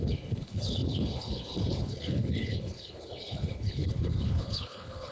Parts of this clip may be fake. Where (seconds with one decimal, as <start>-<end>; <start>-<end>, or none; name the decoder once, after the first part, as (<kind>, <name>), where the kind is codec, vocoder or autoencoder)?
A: 0.0-5.1 (codec, HILCodec)